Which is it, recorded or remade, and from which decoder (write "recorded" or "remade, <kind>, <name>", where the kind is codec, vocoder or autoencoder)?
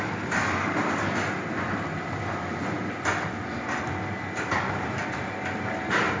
recorded